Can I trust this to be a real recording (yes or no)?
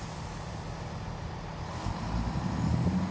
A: yes